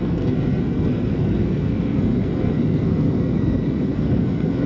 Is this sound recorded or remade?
remade